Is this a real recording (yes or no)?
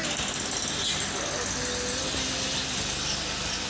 yes